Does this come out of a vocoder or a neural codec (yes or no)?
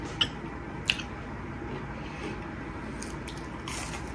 no